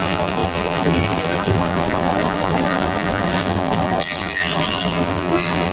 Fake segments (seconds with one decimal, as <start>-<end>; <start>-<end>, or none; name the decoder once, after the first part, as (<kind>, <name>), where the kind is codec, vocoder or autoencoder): 0.0-5.7 (vocoder, BigVGAN v2)